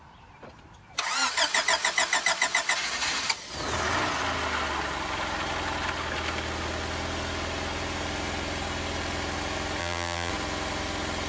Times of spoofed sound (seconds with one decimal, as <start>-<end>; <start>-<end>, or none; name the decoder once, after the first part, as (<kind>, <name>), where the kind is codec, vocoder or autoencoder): 9.8-10.3 (vocoder, BigVGAN v2)